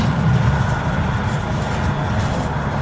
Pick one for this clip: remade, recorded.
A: recorded